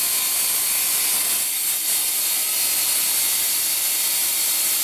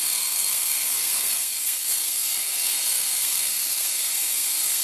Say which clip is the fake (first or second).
second